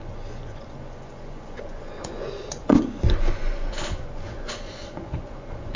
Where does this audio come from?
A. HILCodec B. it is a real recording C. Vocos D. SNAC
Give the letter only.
C